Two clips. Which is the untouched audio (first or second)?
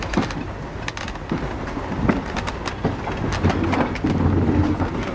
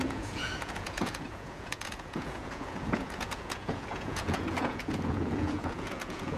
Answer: first